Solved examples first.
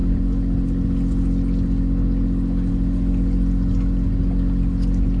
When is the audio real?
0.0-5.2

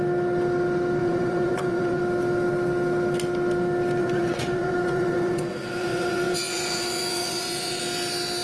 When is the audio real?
0.0-1.0; 2.0-4.0; 7.8-8.4

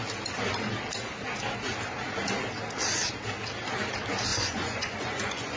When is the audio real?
0.0-4.3

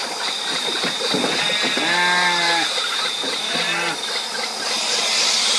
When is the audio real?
0.0-5.6

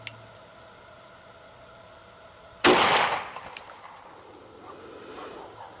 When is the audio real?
0.0-5.8